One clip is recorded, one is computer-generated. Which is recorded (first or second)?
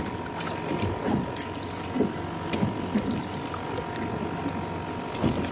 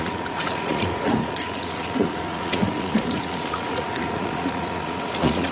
first